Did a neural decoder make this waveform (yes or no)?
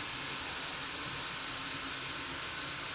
no